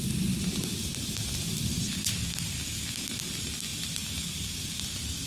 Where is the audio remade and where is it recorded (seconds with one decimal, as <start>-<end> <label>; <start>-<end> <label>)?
0.0-5.3 recorded